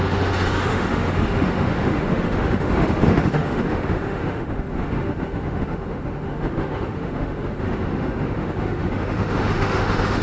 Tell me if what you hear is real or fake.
fake